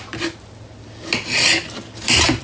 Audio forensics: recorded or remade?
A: recorded